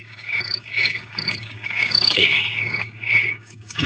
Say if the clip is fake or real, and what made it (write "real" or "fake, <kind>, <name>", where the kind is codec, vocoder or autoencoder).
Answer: fake, codec, DAC